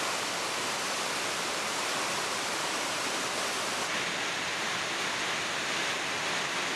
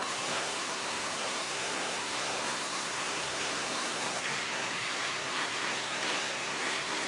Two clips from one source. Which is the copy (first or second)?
second